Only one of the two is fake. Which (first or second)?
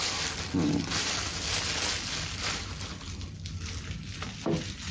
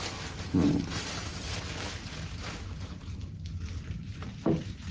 second